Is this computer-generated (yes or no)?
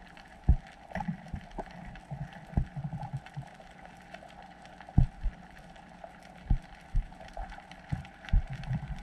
yes